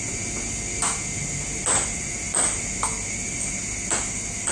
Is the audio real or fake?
real